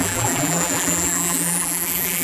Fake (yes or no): yes